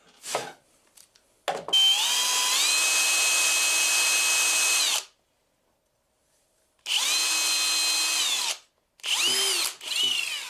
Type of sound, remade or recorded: recorded